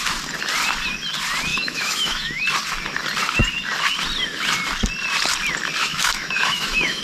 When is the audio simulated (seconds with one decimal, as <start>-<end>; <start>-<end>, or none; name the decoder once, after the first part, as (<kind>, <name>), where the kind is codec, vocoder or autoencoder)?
1.5-2.4 (autoencoder, DAC-VAE); 5.8-7.0